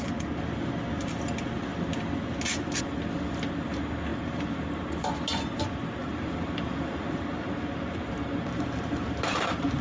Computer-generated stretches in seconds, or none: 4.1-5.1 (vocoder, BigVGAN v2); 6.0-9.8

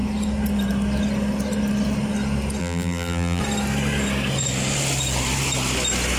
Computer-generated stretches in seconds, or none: 2.6-3.4 (vocoder, BigVGAN v2)

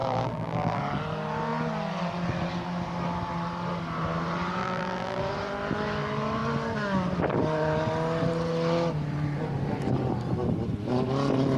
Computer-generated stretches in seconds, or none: 0.0-0.8 (vocoder, BigVGAN v2); 4.6-5.2

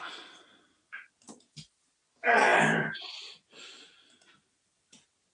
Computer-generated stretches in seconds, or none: none

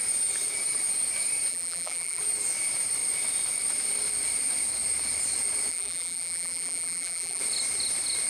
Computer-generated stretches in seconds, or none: 1.5-2.2 (vocoder, BigVGAN v2); 5.7-7.4